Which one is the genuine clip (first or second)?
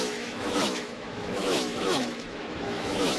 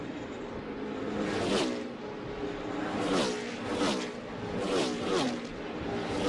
second